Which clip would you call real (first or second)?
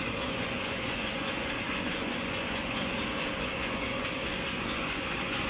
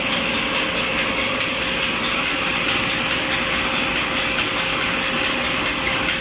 second